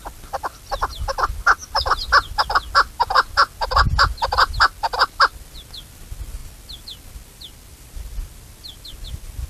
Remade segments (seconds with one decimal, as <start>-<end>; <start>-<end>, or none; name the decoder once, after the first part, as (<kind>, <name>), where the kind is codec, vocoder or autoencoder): none